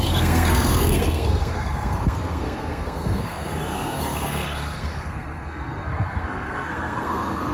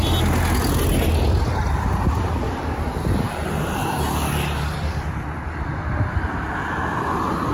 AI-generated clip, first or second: first